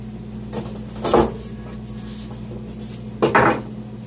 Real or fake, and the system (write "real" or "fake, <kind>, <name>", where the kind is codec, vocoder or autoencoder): real